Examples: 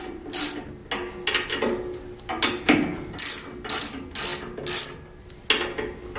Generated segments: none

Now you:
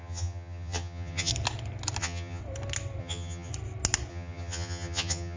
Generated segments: 0.0-1.3 (vocoder, HiFi-GAN); 2.0-2.4; 3.0-3.5; 4.1-5.4